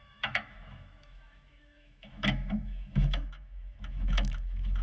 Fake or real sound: fake